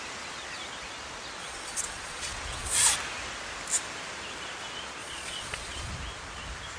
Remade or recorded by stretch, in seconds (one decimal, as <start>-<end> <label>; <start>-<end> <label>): 0.0-1.4 recorded; 1.4-2.9 remade; 2.9-5.0 recorded; 5.0-5.9 remade; 5.9-6.8 recorded